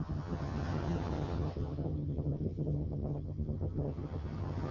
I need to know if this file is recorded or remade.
remade